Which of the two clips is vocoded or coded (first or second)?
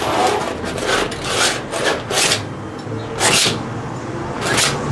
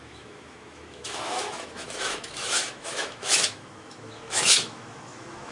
second